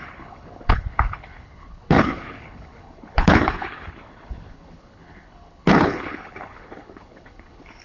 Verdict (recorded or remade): remade